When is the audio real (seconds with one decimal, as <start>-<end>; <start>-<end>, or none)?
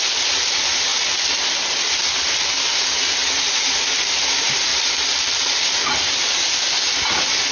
0.0-7.5